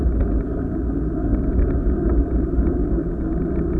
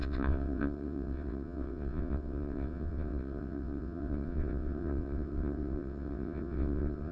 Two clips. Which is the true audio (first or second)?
first